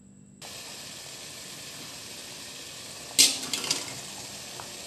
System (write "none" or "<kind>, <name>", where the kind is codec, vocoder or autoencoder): none